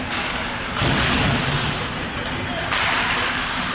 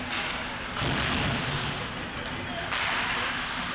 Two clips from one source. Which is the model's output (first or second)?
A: first